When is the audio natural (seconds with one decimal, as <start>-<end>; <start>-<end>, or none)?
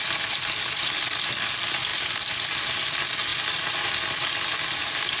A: 0.0-5.2